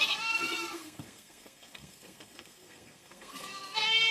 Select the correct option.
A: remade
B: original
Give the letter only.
A